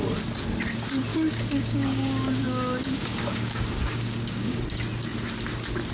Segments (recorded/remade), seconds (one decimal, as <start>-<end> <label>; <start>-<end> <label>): 0.0-1.1 recorded; 1.1-4.6 remade; 4.6-5.9 recorded